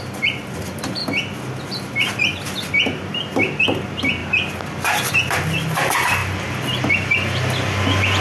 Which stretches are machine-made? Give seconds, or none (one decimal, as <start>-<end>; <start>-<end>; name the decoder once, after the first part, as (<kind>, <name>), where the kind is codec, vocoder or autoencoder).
none